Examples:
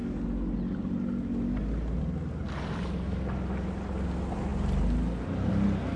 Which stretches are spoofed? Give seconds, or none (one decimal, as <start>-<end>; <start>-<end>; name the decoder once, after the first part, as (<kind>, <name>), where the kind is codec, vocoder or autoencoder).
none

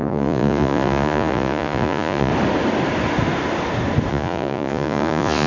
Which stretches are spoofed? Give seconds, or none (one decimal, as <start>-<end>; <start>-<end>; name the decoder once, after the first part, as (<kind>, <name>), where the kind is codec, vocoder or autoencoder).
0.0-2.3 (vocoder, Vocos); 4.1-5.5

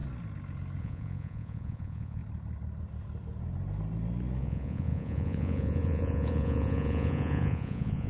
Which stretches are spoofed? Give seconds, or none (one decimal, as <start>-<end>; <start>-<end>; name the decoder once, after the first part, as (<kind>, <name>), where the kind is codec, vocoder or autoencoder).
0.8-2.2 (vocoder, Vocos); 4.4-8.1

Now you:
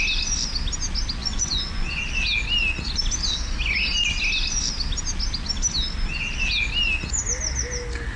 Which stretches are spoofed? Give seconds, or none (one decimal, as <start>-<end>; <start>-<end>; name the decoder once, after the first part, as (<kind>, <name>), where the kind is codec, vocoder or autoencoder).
1.2-2.0 (vocoder, Vocos)

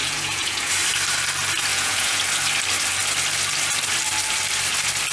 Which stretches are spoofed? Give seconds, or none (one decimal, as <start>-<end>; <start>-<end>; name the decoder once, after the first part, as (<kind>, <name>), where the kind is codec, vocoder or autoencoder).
0.0-0.7 (vocoder, Vocos); 1.7-2.2

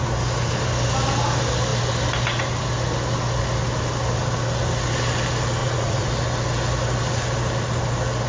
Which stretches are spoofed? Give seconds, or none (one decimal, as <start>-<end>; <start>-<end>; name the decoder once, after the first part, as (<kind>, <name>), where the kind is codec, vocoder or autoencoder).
5.6-6.1 (vocoder, Vocos)